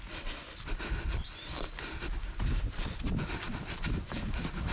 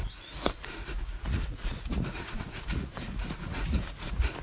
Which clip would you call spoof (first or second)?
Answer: second